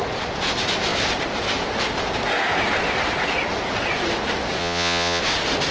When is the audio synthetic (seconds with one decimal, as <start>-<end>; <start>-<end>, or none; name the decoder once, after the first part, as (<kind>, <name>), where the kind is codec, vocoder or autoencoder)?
4.6-5.2 (vocoder, Vocos)